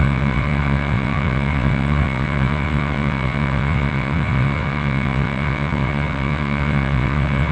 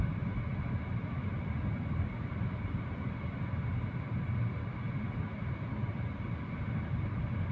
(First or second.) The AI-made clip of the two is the first